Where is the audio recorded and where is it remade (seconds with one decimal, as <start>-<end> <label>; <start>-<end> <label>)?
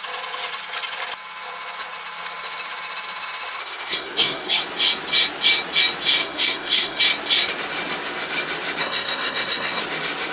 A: 0.0-3.6 recorded; 3.6-4.6 remade; 4.6-6.2 recorded; 6.2-7.0 remade; 7.0-8.8 recorded; 8.8-9.8 remade; 9.8-10.3 recorded